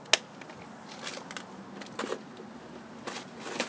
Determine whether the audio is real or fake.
real